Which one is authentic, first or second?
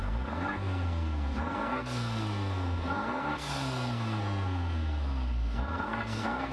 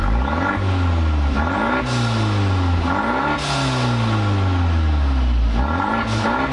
second